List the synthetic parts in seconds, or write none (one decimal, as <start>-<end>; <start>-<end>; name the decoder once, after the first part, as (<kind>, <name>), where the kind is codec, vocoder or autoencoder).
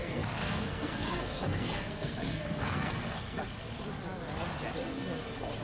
0.0-3.4 (codec, SNAC)